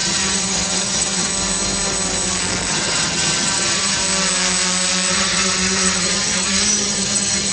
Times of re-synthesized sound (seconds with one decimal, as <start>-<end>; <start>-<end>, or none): 0.0-1.3; 2.7-4.0; 5.1-7.5